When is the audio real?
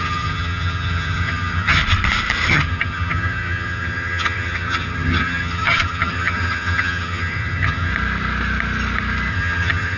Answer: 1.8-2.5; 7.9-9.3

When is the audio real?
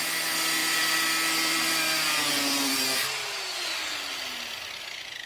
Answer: 0.0-0.6; 3.7-5.3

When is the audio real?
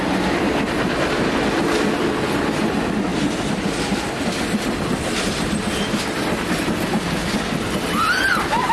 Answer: 0.0-8.7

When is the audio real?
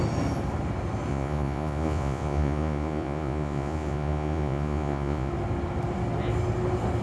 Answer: 0.0-1.1; 5.3-7.0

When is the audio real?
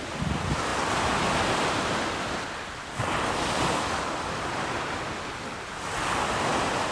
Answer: 0.0-6.9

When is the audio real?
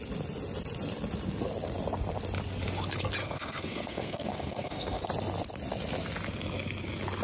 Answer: 0.0-3.2; 5.0-7.2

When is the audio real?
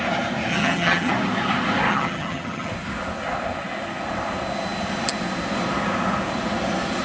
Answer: 0.0-0.5; 1.1-1.9; 2.7-7.0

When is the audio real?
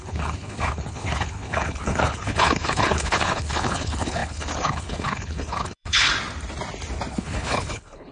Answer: 6.1-7.1